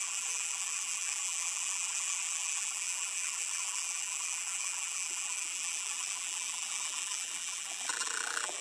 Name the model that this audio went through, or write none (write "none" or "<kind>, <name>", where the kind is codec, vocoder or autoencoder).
vocoder, BigVGAN v2